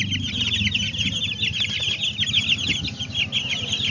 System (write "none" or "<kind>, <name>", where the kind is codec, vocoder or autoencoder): none